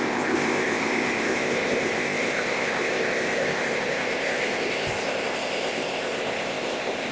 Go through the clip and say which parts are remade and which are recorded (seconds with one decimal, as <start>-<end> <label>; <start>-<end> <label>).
0.0-7.1 remade